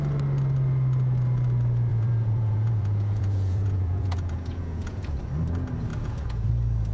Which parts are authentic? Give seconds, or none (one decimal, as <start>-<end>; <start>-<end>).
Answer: 0.0-1.9; 5.2-5.9; 6.5-6.9